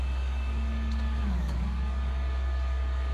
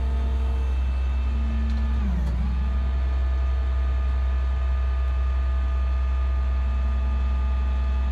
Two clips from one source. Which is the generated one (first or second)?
first